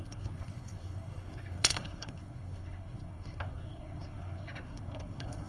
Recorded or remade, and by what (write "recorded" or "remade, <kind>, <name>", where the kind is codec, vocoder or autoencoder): remade, codec, SNAC